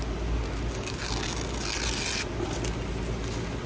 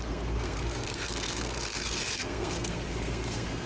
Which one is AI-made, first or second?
second